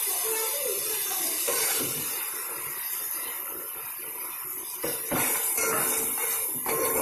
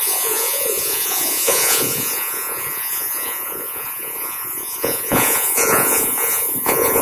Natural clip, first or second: first